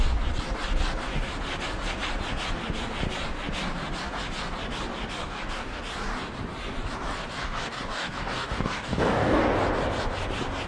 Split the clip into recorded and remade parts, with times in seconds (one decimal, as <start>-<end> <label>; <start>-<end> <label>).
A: 0.0-5.2 recorded; 5.2-5.8 remade; 5.8-7.4 recorded; 7.4-9.4 remade; 9.4-10.7 recorded